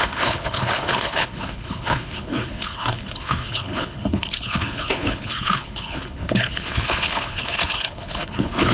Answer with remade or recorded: remade